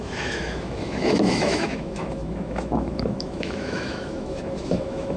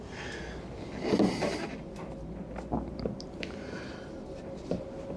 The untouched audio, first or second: second